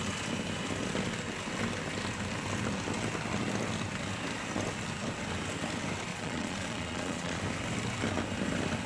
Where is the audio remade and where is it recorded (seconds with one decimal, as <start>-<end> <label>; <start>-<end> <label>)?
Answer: 0.0-6.1 recorded; 6.1-7.4 remade; 7.4-8.9 recorded